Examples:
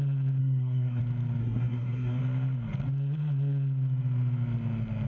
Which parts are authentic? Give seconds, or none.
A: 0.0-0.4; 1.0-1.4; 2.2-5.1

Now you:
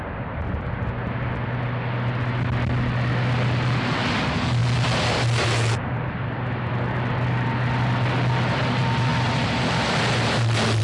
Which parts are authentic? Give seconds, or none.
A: 0.0-10.8

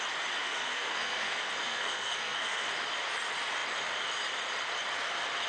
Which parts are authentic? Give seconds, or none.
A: 0.0-0.4; 2.7-5.5

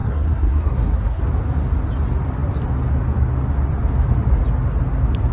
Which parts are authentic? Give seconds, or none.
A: 1.2-5.3

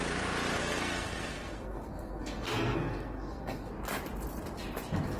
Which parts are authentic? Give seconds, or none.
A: 0.0-0.6; 3.7-5.2

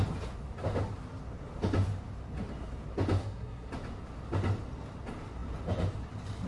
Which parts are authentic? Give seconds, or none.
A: 0.0-3.2; 3.7-6.5

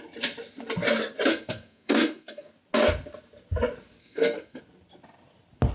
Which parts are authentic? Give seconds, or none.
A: 0.0-1.3; 2.5-4.0; 4.6-5.7